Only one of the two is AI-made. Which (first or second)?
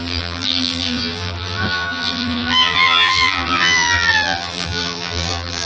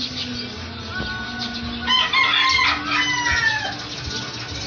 first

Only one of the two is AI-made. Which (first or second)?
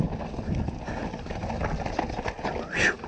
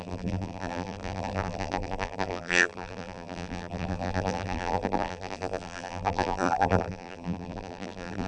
second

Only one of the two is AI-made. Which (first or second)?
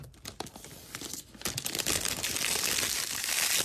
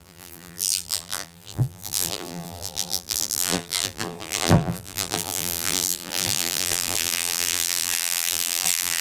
second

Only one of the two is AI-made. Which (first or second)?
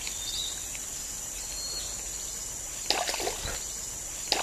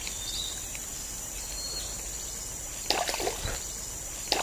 second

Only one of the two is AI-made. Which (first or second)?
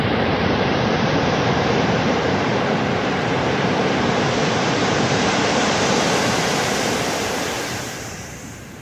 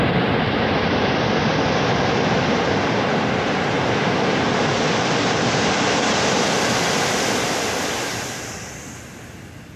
first